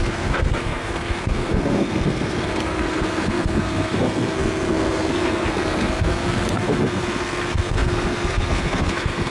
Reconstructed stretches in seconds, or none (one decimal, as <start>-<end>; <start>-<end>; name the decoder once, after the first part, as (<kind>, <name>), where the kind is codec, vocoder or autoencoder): 0.0-9.3 (codec, SNAC)